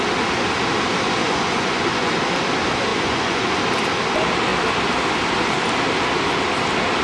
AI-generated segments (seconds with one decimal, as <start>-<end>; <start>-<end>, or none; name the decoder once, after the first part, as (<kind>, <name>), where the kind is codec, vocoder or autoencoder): 1.2-2.1 (vocoder, Vocos); 2.9-3.6